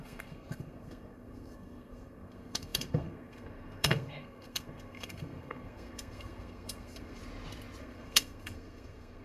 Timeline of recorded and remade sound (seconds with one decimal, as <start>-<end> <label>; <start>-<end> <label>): 0.0-7.2 remade; 7.2-7.8 recorded; 7.8-9.2 remade